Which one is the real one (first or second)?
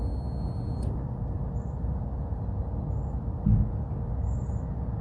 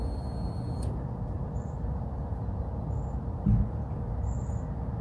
first